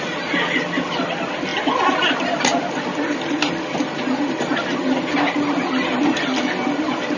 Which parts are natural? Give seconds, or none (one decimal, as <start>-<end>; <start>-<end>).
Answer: 0.0-7.2